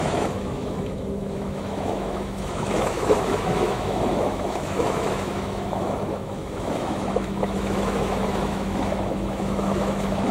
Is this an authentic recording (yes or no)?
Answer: no